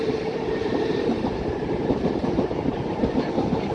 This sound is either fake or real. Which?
fake